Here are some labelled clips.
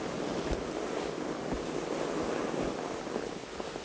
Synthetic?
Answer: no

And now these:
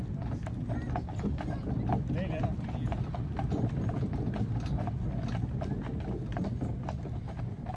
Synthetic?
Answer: no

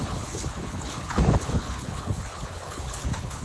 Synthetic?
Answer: yes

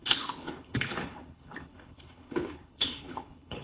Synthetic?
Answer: yes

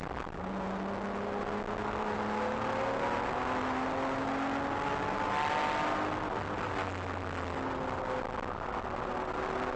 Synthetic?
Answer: no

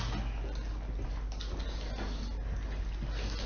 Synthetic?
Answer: no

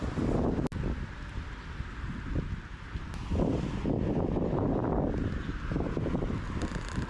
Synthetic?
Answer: no